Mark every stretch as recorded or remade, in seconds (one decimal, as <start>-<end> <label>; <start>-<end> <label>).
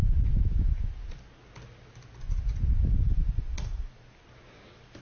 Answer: 0.0-5.0 recorded